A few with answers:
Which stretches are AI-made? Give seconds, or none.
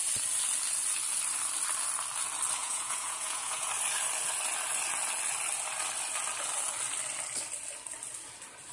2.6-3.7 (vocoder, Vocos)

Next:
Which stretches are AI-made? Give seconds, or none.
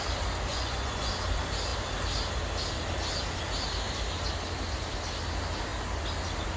0.5-1.1 (vocoder, Vocos)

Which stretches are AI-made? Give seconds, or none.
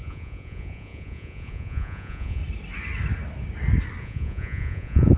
0.0-2.4 (vocoder, Vocos); 4.0-5.2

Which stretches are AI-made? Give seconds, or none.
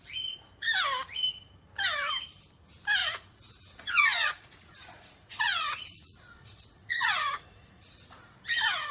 3.0-7.9 (vocoder, Vocos)